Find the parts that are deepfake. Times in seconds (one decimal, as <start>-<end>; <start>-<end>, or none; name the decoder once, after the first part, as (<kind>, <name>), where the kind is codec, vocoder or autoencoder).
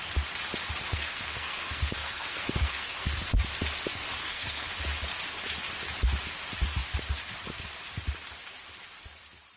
0.9-3.3 (codec, SNAC); 4.2-4.7